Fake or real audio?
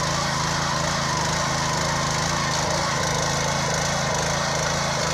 real